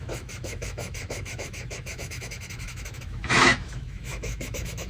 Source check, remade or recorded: remade